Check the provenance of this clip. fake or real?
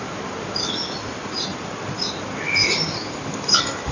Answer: real